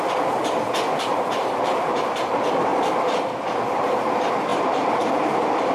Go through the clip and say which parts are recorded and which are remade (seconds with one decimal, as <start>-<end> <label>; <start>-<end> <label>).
0.0-1.1 recorded; 1.1-2.3 remade; 2.3-4.5 recorded; 4.5-5.2 remade; 5.2-5.7 recorded